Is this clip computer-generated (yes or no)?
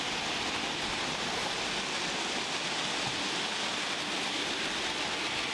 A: no